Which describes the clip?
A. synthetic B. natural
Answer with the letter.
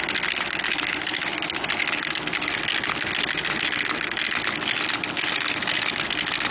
B